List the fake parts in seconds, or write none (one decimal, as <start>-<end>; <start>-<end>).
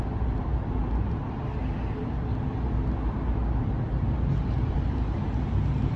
none